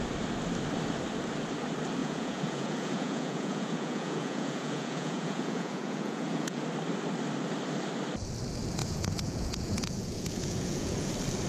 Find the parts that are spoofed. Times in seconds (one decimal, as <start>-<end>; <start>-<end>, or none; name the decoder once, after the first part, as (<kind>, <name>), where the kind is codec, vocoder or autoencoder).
2.0-6.6 (vocoder, Vocos); 8.8-11.1